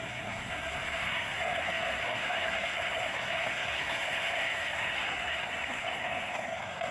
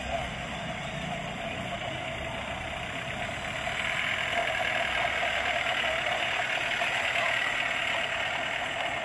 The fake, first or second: first